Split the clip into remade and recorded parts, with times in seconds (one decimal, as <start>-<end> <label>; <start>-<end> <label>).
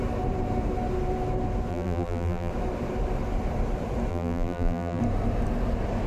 0.0-1.7 recorded; 1.7-2.5 remade; 2.5-4.1 recorded; 4.1-5.0 remade; 5.0-6.1 recorded